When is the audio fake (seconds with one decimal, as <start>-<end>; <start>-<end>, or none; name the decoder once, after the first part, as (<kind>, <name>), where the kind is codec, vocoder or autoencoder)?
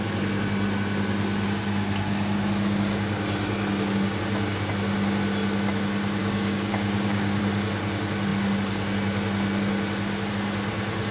6.2-7.4 (codec, DAC)